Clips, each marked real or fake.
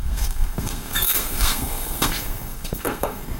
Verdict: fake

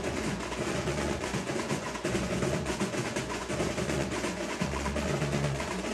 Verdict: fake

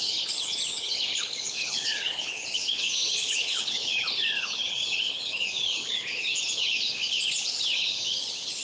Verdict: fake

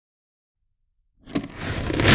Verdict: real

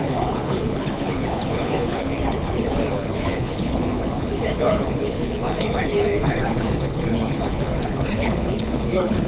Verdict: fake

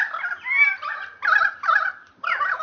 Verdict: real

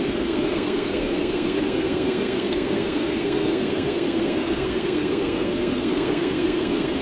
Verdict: fake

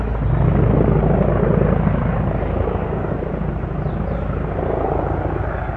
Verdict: real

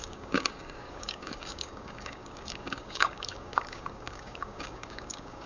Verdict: fake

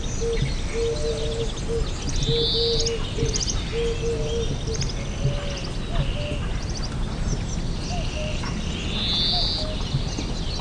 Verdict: real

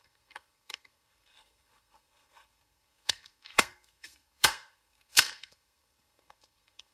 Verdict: fake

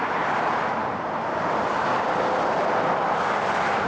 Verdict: real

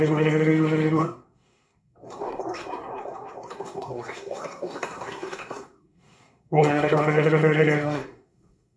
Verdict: fake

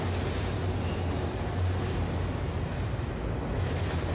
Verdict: real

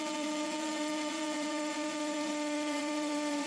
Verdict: fake